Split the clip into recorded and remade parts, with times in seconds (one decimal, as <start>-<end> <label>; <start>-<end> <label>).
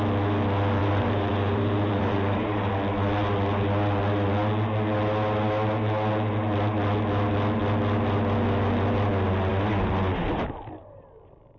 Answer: 0.0-0.8 recorded; 0.8-2.7 remade; 2.7-11.6 recorded